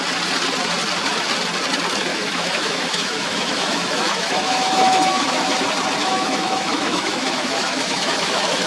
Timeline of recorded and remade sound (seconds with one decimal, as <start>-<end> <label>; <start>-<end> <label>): 0.0-2.1 recorded; 2.1-5.6 remade; 5.6-6.0 recorded; 6.0-8.7 remade